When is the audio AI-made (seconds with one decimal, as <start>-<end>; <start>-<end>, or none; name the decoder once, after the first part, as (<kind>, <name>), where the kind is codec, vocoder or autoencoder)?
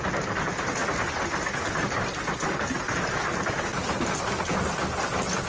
none